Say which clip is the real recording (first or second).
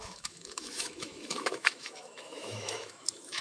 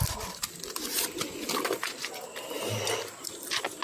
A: second